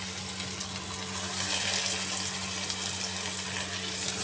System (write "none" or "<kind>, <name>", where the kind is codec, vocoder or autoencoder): none